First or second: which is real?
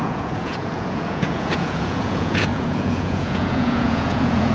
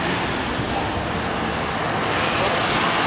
second